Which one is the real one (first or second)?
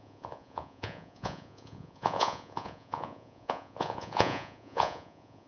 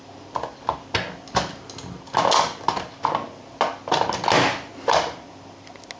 second